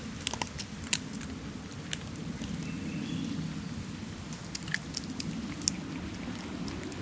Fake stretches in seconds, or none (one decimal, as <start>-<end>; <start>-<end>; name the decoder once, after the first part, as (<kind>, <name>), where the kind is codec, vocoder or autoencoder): none